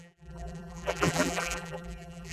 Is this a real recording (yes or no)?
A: no